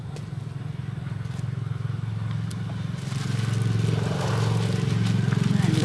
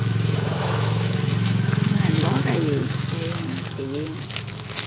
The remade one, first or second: second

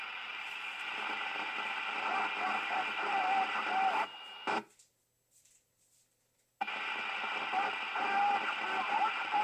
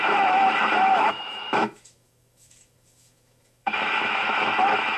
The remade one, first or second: second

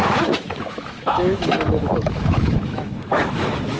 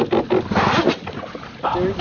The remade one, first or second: first